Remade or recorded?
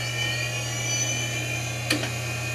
recorded